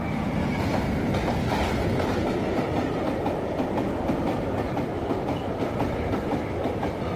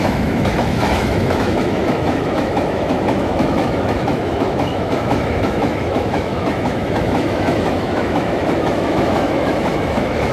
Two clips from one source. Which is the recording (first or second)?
first